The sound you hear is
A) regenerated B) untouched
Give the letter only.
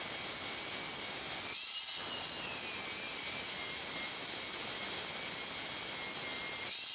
B